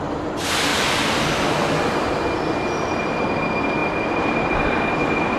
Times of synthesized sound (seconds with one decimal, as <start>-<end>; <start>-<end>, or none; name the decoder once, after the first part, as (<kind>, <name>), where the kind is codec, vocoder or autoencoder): 0.0-5.4 (vocoder, BigVGAN v2)